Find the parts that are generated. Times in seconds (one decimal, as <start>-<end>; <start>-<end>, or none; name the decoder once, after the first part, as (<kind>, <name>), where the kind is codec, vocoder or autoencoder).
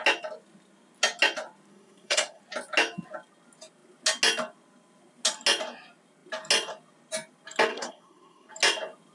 1.7-2.4 (codec, SNAC); 7.7-8.5